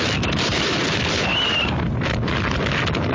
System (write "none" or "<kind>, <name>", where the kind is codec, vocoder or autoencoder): none